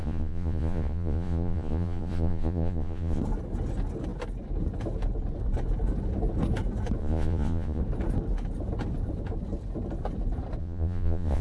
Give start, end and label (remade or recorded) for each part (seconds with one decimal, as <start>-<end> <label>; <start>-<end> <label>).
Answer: 0.0-3.2 remade; 3.2-7.0 recorded; 7.0-7.8 remade; 7.8-10.6 recorded; 10.6-11.4 remade

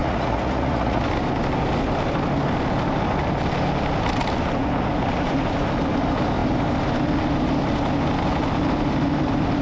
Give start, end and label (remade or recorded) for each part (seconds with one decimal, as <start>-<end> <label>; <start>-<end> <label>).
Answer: 0.0-1.0 remade; 1.0-9.6 recorded

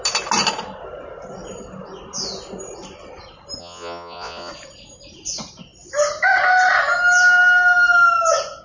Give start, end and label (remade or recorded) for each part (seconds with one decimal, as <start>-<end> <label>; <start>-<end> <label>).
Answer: 0.0-3.6 recorded; 3.6-4.5 remade; 4.5-8.6 recorded

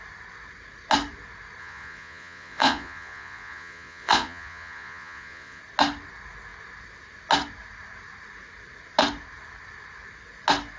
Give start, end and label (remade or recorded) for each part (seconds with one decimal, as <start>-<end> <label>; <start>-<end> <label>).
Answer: 0.0-1.6 recorded; 1.6-5.6 remade; 5.6-10.8 recorded

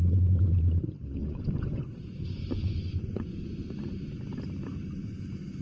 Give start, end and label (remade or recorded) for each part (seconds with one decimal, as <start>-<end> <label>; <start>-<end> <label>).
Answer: 0.0-1.2 recorded; 1.2-4.1 remade; 4.1-5.6 recorded